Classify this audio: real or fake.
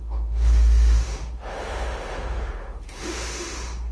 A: fake